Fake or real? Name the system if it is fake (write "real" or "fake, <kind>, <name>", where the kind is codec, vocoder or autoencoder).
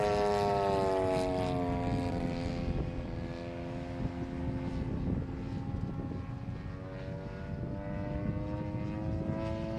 real